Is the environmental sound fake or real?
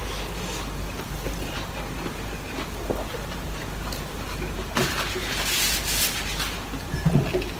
real